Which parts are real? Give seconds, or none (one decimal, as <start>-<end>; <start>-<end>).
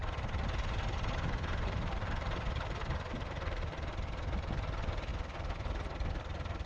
4.0-5.1